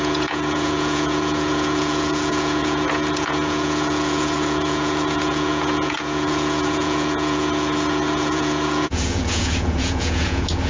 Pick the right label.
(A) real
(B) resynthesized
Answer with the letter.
B